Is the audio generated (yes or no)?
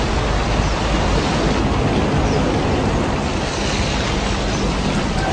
no